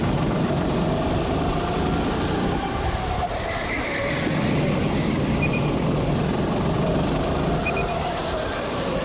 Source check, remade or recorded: remade